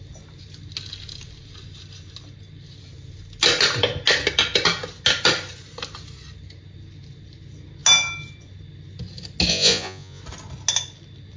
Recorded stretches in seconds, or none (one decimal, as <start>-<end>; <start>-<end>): 0.0-9.5; 10.2-11.4